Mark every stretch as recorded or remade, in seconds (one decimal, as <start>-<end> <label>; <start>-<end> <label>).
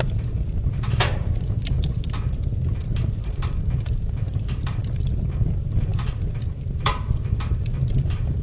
0.0-1.6 remade; 1.6-3.0 recorded; 3.0-8.4 remade